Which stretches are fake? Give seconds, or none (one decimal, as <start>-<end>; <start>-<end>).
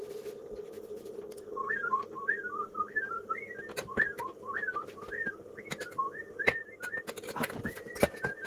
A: none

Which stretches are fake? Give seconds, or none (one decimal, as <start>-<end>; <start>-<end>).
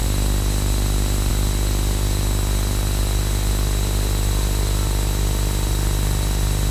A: none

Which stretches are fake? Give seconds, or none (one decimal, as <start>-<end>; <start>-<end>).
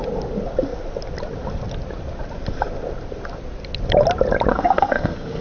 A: 4.5-5.4